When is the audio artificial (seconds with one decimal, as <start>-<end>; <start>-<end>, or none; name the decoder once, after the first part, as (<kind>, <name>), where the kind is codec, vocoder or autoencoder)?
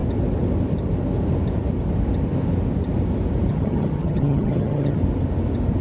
3.5-5.0 (vocoder, HiFi-GAN)